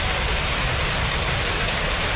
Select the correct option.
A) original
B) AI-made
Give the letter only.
B